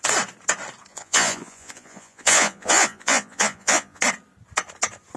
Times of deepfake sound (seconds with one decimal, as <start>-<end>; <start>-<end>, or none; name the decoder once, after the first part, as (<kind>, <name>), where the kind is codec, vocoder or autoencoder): 0.9-4.0 (vocoder, Vocos)